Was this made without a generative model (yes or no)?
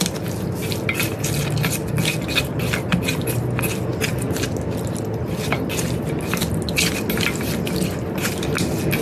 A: yes